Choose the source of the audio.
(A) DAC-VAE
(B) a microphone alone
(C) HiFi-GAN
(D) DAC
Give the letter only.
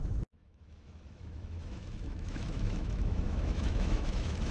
A